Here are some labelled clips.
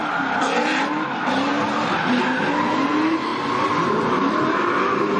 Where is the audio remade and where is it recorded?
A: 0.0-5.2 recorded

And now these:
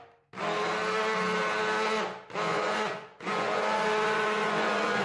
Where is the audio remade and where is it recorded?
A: 0.0-2.5 recorded; 2.5-5.0 remade

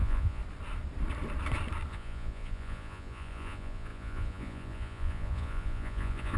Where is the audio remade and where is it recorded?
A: 0.0-0.4 remade; 0.4-1.9 recorded; 1.9-6.4 remade

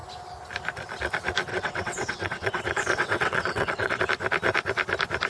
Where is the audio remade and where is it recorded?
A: 0.0-1.5 recorded; 1.5-4.0 remade; 4.0-5.3 recorded

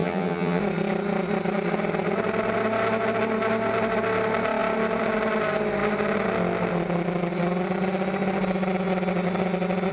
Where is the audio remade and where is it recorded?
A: 0.0-0.6 remade; 0.6-9.9 recorded